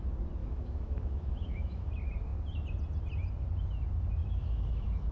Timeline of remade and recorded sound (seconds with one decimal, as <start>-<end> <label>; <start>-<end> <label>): 0.0-0.4 recorded; 0.4-1.9 remade; 1.9-4.2 recorded; 4.2-5.1 remade